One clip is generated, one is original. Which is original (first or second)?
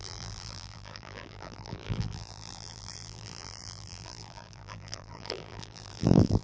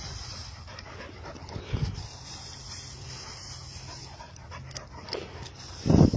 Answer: second